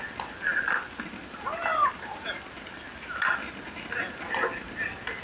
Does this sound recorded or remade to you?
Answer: recorded